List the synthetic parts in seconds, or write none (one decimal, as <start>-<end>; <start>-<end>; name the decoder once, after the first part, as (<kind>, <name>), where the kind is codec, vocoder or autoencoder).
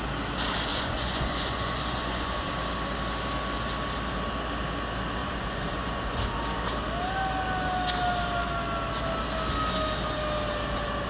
0.7-2.5 (vocoder, Vocos); 5.2-6.4